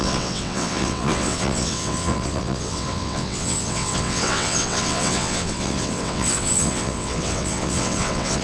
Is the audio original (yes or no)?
no